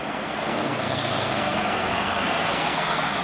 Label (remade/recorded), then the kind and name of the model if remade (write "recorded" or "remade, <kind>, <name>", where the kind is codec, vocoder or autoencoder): remade, codec, SNAC